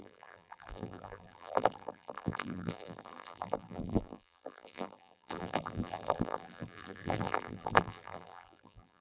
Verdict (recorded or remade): remade